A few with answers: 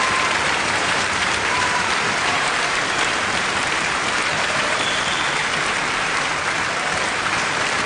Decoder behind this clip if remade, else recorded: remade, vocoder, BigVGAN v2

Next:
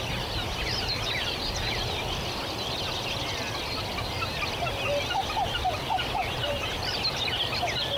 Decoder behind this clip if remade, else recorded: recorded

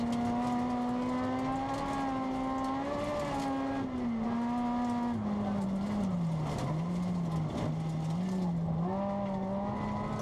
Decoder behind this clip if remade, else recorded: recorded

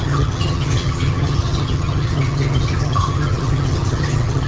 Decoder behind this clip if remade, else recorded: remade, vocoder, HiFi-GAN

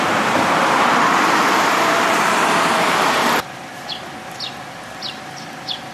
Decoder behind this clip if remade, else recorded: remade, vocoder, BigVGAN v2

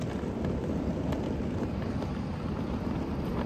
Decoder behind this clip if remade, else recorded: recorded